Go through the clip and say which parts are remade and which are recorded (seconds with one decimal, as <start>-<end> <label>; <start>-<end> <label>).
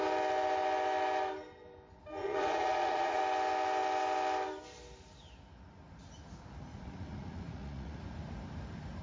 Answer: 0.0-2.2 recorded; 2.2-3.2 remade; 3.2-6.7 recorded; 6.7-8.0 remade; 8.0-9.0 recorded